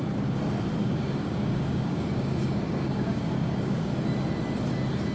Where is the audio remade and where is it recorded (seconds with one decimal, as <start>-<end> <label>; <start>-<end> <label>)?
0.0-0.8 recorded; 0.8-3.9 remade; 3.9-5.1 recorded